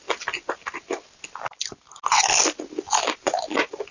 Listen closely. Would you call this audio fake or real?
real